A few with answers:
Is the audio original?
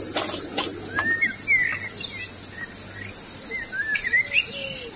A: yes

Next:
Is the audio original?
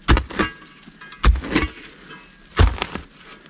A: yes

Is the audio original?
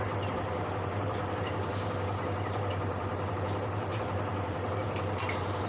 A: no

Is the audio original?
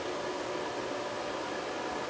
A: yes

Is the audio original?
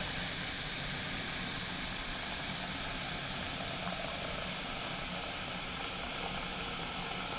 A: yes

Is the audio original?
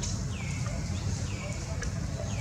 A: yes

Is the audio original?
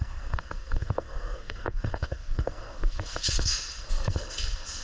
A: no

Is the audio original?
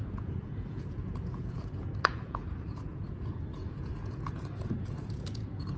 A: no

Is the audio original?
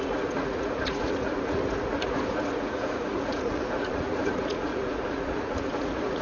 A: no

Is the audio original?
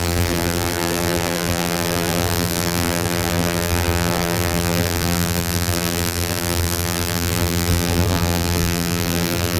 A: no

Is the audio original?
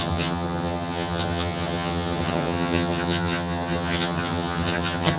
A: no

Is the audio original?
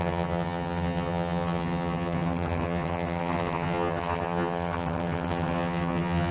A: no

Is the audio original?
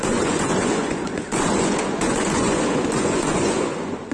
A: no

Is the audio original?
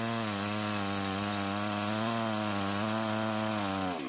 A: yes